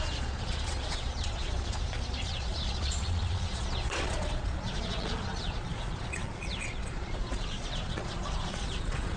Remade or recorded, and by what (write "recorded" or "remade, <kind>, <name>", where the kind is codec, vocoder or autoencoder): remade, vocoder, Vocos